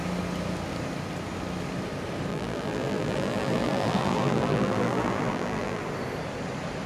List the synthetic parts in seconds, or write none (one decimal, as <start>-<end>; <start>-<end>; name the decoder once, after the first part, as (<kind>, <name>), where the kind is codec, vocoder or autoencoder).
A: 2.3-5.8 (vocoder, BigVGAN v2)